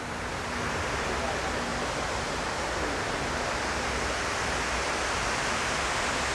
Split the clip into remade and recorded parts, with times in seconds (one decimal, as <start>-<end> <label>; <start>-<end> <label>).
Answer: 0.0-6.3 recorded